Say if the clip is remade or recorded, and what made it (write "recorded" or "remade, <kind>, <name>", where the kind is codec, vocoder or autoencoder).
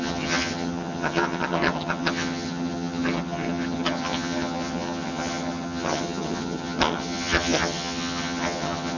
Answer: remade, vocoder, HiFi-GAN